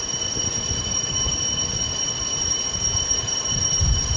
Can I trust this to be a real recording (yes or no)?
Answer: no